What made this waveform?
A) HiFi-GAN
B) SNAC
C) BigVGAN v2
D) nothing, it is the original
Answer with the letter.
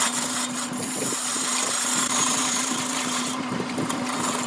C